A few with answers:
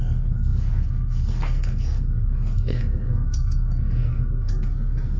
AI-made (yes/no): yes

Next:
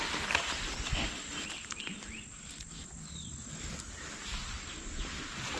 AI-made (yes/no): no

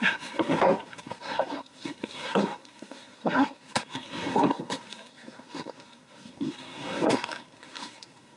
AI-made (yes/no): yes